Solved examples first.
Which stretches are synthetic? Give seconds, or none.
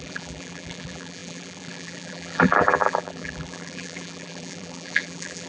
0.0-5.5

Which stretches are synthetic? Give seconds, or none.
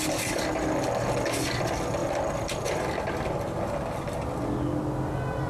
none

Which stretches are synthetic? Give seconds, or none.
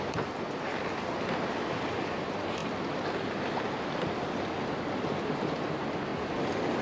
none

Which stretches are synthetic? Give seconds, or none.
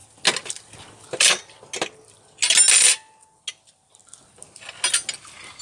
none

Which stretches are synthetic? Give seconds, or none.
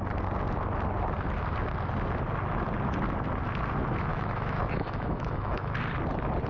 4.1-5.8